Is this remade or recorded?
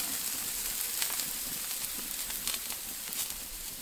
recorded